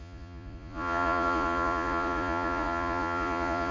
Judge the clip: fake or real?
fake